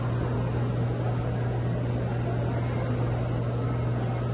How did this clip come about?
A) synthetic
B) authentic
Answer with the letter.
B